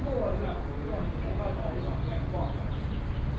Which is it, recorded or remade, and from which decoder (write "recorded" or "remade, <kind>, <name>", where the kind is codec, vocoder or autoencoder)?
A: recorded